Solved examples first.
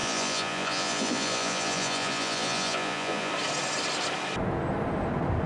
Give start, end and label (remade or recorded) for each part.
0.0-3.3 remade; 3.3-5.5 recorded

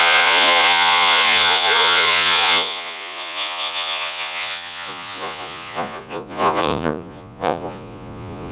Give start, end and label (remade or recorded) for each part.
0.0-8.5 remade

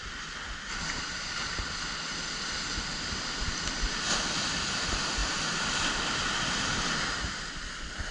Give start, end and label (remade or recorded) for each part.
0.0-8.1 recorded

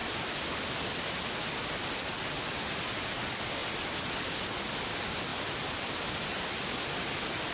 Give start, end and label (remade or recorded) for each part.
0.0-7.5 recorded

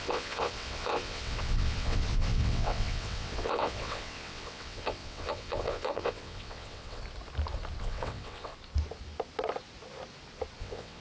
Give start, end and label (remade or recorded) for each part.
0.0-7.0 remade; 7.0-7.8 recorded; 7.8-8.5 remade; 8.5-10.6 recorded; 10.6-11.0 remade